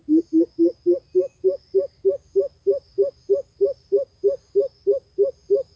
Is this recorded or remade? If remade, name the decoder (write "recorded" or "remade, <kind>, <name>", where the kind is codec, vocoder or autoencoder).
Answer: recorded